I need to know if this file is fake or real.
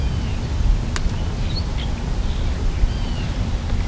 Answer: real